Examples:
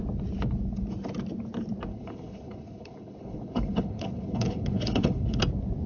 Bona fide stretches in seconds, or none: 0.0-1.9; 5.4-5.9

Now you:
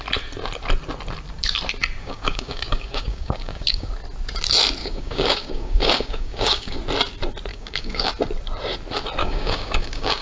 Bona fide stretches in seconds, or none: 0.0-2.0; 3.9-4.8; 6.8-7.5; 8.1-9.2